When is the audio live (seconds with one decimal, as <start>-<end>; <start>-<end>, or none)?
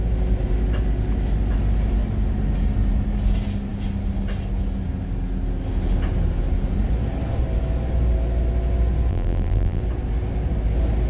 0.0-9.1; 9.8-11.1